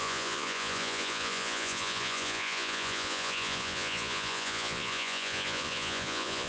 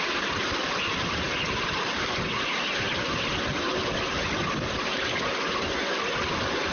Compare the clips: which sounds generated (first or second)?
first